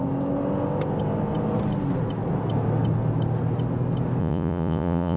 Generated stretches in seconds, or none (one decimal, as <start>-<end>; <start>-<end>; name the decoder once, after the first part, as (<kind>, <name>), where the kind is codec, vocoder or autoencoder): 4.2-5.2 (vocoder, Vocos)